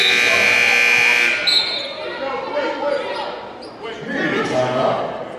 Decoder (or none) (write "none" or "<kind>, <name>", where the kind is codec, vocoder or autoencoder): none